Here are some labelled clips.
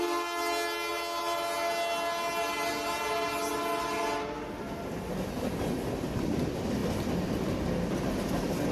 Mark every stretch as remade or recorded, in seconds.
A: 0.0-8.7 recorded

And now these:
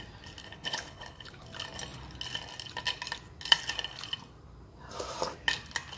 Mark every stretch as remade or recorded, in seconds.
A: 0.0-0.4 recorded; 0.4-1.3 remade; 1.3-6.0 recorded

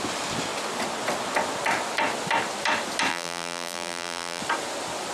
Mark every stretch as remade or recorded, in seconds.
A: 0.0-3.1 recorded; 3.1-4.4 remade; 4.4-5.1 recorded

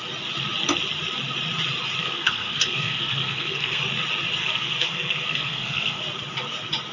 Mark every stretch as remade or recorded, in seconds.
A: 0.0-2.0 recorded; 2.0-3.8 remade; 3.8-4.4 recorded; 4.4-6.0 remade; 6.0-6.9 recorded